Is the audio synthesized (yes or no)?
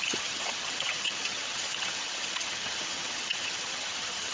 yes